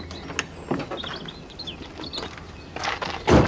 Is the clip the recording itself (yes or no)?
yes